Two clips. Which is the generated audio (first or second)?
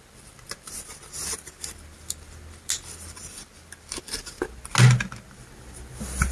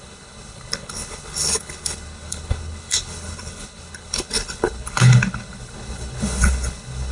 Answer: second